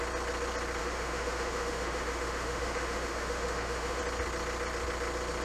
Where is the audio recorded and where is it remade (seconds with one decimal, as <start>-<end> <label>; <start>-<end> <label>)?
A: 0.0-0.8 recorded; 0.8-4.0 remade; 4.0-5.4 recorded